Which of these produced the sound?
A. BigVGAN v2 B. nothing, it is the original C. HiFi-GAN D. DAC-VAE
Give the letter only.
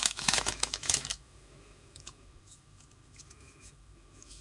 D